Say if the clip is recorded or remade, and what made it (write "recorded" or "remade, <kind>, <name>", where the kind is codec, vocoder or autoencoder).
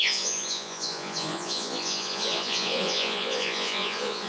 remade, vocoder, Vocos